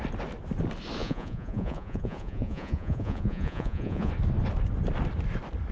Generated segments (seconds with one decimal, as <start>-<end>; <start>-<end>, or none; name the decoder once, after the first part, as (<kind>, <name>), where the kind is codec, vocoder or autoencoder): 1.0-4.1 (vocoder, Vocos)